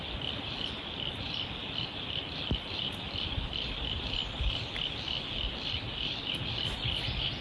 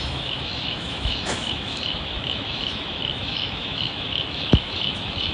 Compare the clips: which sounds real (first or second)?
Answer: first